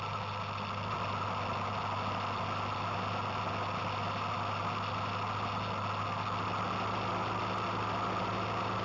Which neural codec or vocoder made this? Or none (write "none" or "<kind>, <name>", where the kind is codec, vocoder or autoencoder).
none